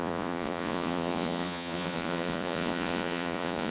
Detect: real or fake fake